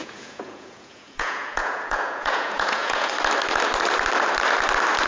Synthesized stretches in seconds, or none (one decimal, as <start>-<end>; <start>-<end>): 0.0-3.1